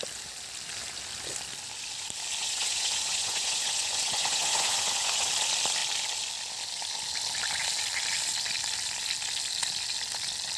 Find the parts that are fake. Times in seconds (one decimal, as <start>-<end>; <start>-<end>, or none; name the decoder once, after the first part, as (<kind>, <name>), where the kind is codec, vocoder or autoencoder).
2.4-5.3 (vocoder, Vocos)